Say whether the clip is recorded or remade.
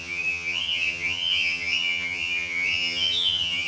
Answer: remade